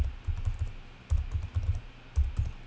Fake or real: real